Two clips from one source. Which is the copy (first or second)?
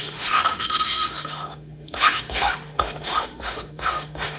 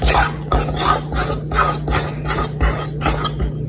first